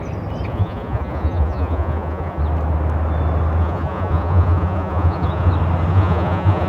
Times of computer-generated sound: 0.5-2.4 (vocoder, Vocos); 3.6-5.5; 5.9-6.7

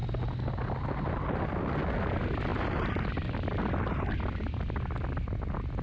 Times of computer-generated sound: none

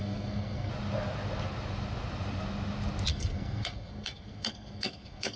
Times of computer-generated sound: 0.0-0.7 (codec, SNAC); 3.1-5.4

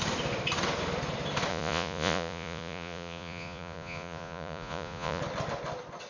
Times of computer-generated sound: 1.5-5.2 (vocoder, Vocos)

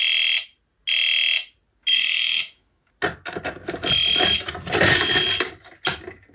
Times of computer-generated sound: 1.9-2.9 (autoencoder, DAC-VAE)

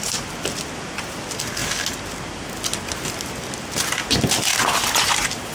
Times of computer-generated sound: 0.0-1.6 (vocoder, BigVGAN v2); 3.0-4.5; 5.1-5.5

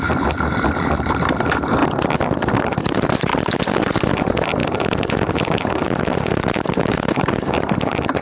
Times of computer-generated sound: 0.0-1.8 (vocoder, BigVGAN v2); 2.8-3.3; 4.1-8.2

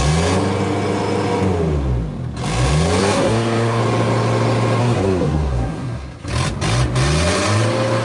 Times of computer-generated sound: 3.0-3.8 (codec, SNAC); 4.8-6.3